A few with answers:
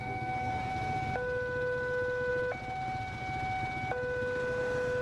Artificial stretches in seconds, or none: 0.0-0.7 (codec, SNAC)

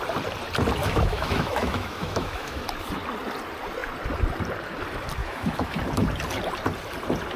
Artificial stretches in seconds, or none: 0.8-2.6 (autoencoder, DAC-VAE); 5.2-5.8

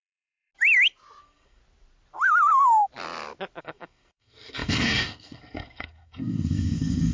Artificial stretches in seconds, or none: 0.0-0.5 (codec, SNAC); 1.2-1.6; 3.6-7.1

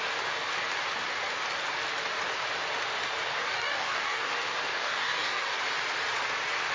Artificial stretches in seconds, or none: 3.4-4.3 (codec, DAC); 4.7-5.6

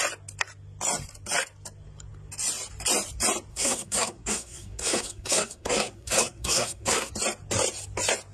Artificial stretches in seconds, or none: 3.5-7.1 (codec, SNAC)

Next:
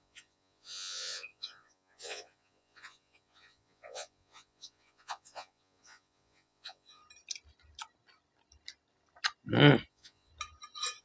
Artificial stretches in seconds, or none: 0.0-7.0 (vocoder, Vocos); 9.9-10.3

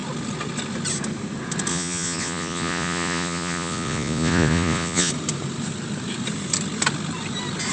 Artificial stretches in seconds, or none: 1.7-5.1 (vocoder, Vocos)

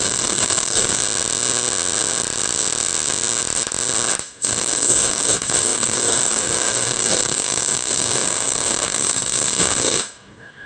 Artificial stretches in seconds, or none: 0.0-1.0 (codec, DAC); 4.2-10.7